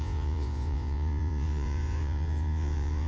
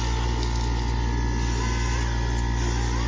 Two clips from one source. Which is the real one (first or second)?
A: second